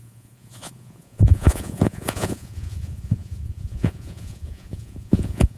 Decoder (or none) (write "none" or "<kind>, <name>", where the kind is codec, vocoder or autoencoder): vocoder, Vocos